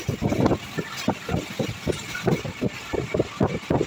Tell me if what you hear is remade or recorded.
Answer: recorded